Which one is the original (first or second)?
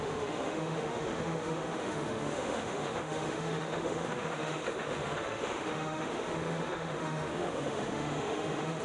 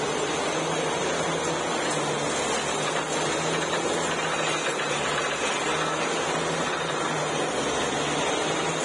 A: second